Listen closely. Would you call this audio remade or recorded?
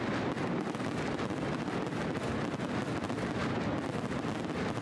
recorded